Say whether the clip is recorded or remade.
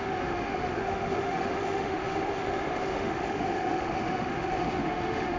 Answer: remade